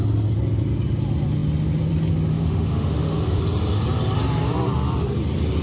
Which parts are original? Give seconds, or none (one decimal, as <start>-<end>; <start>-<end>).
0.0-2.3; 3.4-5.6